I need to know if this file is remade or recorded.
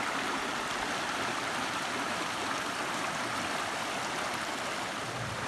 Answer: remade